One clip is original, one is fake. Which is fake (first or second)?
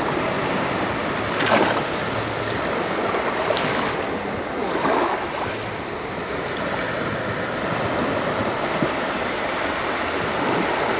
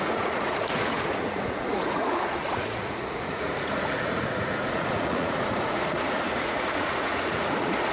second